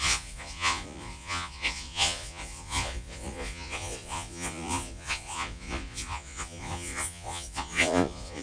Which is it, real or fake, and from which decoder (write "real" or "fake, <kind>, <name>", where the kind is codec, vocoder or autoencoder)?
fake, vocoder, Vocos